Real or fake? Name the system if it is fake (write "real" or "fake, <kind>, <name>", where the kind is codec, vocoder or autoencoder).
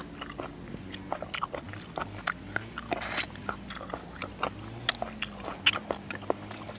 real